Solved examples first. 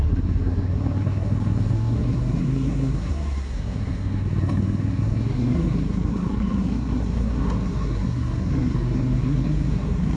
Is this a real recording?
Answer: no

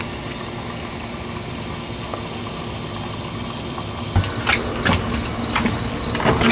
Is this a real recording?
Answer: yes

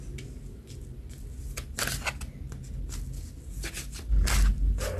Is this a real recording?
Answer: yes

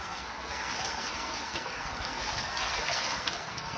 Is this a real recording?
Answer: no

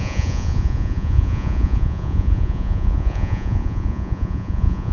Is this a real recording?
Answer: no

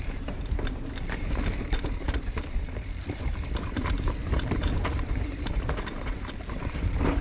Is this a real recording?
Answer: no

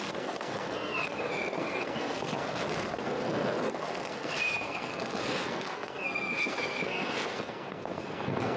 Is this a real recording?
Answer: no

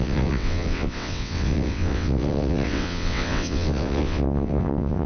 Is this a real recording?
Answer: no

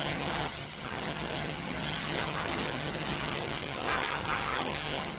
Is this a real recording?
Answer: no